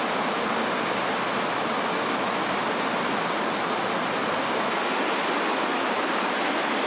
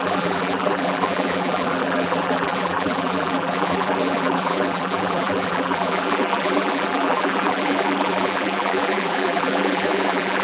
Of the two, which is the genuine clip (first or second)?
first